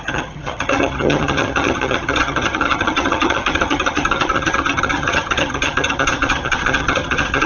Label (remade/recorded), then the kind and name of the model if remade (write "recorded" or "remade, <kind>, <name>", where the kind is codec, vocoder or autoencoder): remade, vocoder, HiFi-GAN